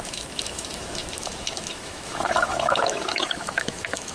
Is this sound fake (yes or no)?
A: yes